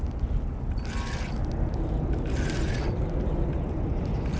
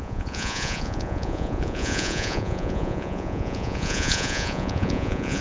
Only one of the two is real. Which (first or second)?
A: first